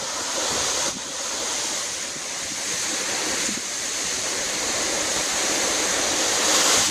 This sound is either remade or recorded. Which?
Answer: recorded